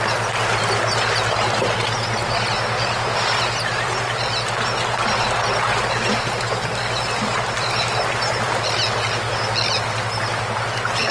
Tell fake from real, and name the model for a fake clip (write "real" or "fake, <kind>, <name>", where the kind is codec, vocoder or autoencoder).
real